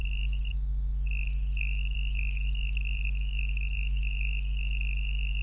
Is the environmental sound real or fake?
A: real